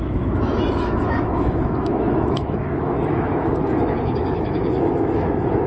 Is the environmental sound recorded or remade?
remade